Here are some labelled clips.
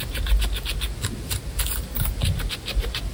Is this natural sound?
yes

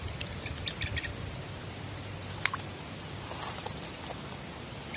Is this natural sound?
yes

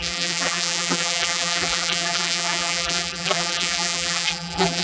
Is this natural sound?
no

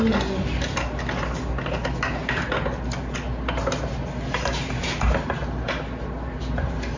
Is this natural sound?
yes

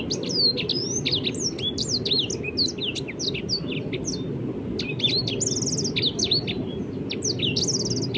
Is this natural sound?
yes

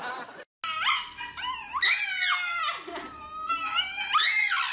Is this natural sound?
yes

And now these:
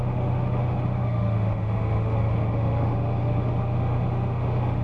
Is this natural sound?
no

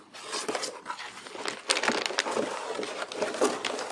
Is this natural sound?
yes